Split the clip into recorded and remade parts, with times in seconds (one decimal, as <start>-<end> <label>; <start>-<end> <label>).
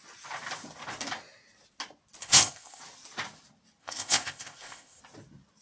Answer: 0.0-2.2 recorded; 2.2-2.8 remade; 2.8-3.8 recorded; 3.8-5.0 remade; 5.0-5.6 recorded